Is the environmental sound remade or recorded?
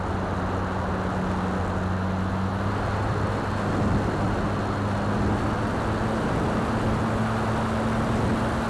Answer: recorded